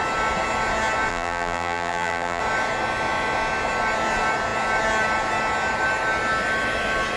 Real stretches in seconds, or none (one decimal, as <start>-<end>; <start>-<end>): 0.0-1.1; 2.4-7.2